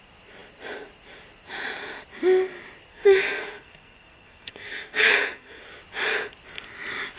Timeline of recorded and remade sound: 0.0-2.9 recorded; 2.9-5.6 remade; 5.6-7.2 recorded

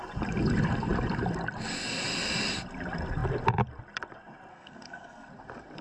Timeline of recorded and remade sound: 0.0-4.5 recorded; 4.5-5.3 remade; 5.3-5.8 recorded

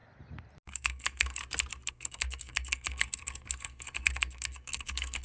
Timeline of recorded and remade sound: 0.0-0.6 recorded; 0.6-1.4 remade; 1.4-1.9 recorded; 1.9-5.2 remade

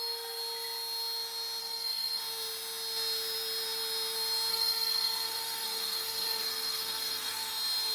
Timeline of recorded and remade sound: 0.0-1.6 recorded; 1.6-2.2 remade; 2.2-4.5 recorded; 4.5-7.5 remade; 7.5-7.9 recorded

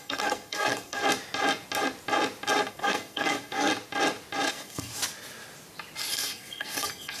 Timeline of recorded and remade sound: 0.0-1.0 remade; 1.0-2.7 recorded; 2.7-3.7 remade; 3.7-4.5 recorded; 4.5-4.9 remade; 4.9-6.1 recorded; 6.1-7.2 remade

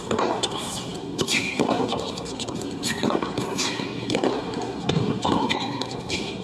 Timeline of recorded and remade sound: 0.0-6.4 remade

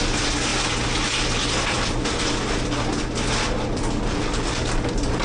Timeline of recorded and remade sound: 0.0-5.2 recorded

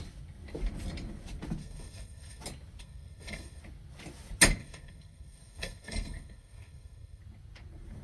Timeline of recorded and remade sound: 0.0-1.6 recorded; 1.6-2.4 remade; 2.4-2.8 recorded; 2.8-3.6 remade; 3.6-4.6 recorded; 4.6-7.2 remade; 7.2-8.0 recorded